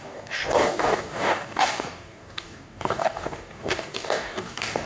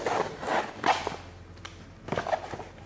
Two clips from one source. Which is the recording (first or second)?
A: second